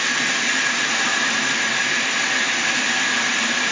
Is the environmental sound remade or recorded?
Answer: recorded